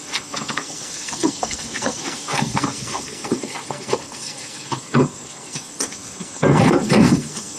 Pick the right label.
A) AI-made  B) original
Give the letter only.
A